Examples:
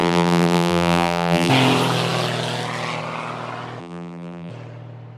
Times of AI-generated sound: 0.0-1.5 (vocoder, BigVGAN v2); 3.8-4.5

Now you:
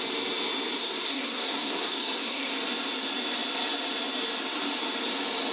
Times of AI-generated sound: 0.8-2.5 (codec, SNAC)